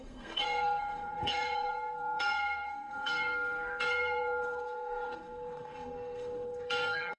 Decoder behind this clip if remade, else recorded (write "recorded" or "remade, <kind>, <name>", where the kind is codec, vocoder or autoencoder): remade, codec, SNAC